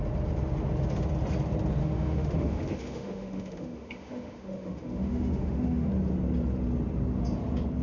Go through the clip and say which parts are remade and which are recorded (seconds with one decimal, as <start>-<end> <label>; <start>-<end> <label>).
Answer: 0.0-1.8 recorded; 1.8-5.9 remade; 5.9-7.8 recorded